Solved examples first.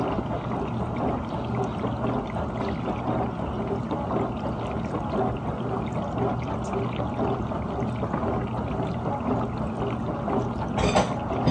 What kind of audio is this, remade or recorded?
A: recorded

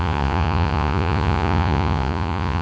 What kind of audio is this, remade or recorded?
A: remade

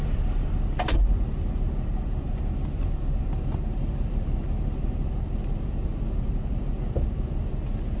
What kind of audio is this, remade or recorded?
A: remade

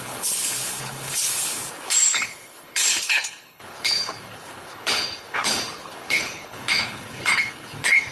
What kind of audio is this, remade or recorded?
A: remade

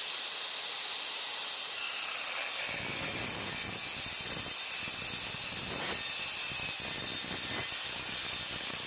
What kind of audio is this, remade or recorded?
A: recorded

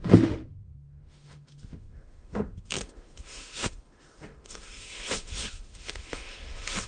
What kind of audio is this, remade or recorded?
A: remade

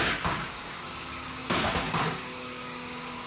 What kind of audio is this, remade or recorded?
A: remade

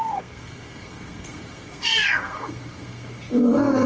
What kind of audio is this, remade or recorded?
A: remade